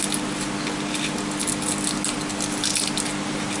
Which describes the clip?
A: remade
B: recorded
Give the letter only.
B